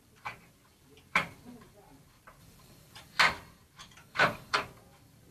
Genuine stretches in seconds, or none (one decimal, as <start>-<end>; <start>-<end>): 0.0-2.4; 3.2-4.0; 4.7-5.3